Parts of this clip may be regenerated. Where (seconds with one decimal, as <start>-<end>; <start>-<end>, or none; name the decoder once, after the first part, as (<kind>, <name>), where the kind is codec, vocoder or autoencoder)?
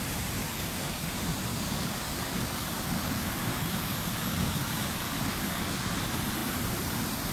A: 0.4-1.1 (codec, DAC); 1.5-5.9